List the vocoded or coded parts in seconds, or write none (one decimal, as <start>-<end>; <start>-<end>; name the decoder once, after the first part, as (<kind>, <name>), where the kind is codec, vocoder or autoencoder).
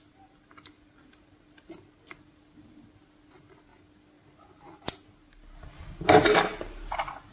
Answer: none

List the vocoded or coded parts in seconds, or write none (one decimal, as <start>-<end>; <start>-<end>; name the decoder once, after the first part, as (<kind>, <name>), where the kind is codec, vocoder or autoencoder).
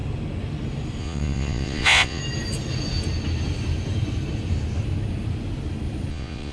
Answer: 1.0-2.2 (vocoder, Vocos); 6.1-6.5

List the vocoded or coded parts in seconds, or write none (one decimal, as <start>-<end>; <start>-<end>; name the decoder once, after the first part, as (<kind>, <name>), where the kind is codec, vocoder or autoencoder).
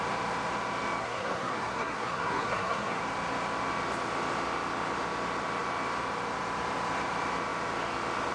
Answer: 1.0-3.0 (codec, SNAC)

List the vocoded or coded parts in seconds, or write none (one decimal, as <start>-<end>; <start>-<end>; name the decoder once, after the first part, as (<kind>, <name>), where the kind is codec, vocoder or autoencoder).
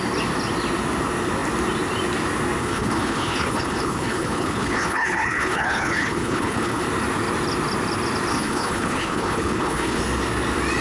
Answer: 2.6-6.8 (codec, HILCodec); 8.3-10.0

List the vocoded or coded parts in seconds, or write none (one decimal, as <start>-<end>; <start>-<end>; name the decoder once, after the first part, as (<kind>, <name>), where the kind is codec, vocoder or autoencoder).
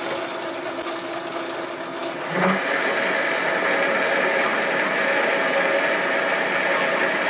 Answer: none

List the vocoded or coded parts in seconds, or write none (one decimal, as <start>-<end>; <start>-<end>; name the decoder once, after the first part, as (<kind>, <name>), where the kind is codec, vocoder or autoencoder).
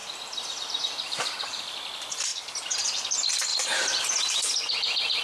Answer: 3.5-4.1 (vocoder, BigVGAN v2)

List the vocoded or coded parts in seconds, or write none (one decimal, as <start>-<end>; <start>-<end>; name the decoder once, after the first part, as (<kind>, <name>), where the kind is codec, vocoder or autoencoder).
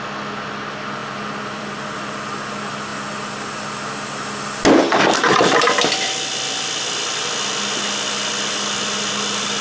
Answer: 1.0-1.7 (vocoder, BigVGAN v2)